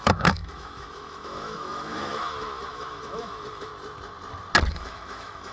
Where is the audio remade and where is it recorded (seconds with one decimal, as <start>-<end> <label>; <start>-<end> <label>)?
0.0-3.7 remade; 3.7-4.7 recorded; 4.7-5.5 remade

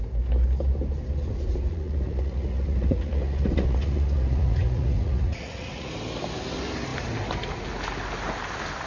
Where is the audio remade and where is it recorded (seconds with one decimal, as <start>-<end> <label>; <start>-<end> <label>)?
0.0-1.7 recorded; 1.7-5.9 remade; 5.9-8.9 recorded

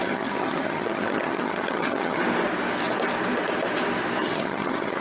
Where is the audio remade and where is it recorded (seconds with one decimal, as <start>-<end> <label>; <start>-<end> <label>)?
0.0-2.2 remade; 2.2-4.2 recorded; 4.2-5.0 remade

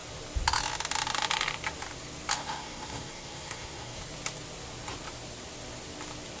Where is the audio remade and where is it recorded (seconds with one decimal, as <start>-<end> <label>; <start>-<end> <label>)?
0.0-2.4 recorded; 2.4-4.0 remade; 4.0-6.4 recorded

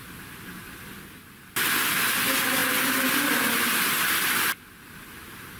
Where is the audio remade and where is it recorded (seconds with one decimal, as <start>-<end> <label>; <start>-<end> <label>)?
0.0-5.6 recorded

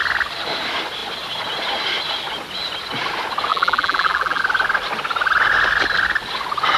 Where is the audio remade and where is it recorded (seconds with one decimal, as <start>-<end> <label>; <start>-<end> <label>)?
0.0-3.5 recorded; 3.5-4.4 remade; 4.4-6.8 recorded

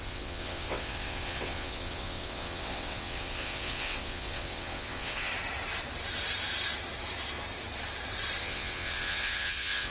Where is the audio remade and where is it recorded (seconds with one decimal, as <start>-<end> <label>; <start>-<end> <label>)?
0.0-5.3 remade; 5.3-8.4 recorded; 8.4-9.9 remade

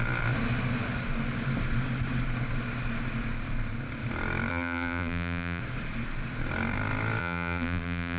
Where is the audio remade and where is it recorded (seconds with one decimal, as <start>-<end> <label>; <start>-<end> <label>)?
0.0-4.5 recorded; 4.5-5.6 remade; 5.6-7.2 recorded; 7.2-8.2 remade